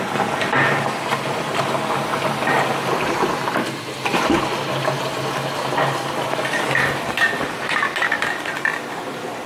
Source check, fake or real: real